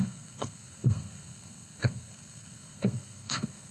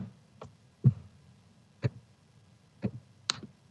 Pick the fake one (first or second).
first